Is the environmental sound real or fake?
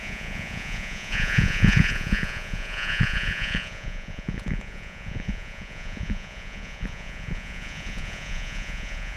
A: fake